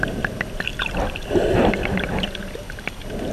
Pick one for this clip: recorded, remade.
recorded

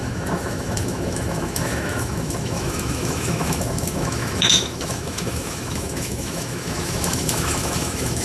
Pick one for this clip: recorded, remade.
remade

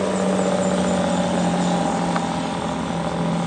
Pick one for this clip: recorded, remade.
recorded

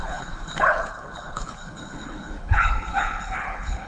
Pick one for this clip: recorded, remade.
remade